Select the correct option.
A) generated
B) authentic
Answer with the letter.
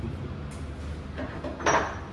B